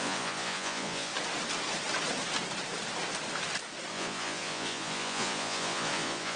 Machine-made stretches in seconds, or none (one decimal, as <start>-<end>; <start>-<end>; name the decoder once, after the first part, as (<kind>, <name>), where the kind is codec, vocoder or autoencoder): 0.0-1.1 (vocoder, Vocos); 3.9-6.4